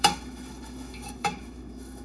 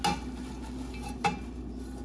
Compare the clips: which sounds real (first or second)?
second